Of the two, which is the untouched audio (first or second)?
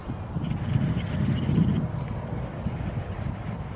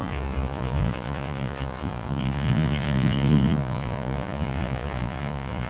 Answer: first